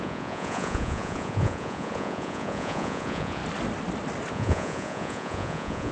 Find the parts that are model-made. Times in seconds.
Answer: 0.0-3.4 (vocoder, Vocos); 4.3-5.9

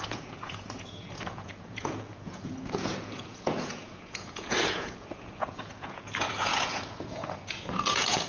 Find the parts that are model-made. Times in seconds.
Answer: 0.0-8.3 (vocoder, Vocos)

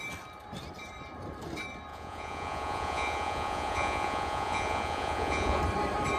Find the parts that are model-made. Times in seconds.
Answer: 1.9-5.6 (vocoder, Vocos)

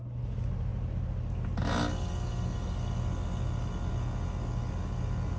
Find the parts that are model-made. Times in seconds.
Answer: none